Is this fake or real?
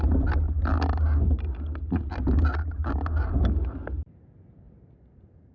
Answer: real